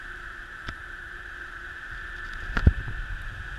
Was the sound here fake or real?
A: fake